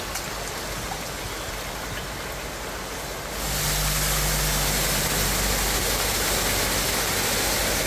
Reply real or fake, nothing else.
real